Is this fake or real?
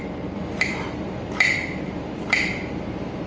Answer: fake